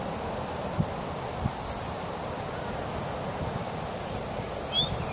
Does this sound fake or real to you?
real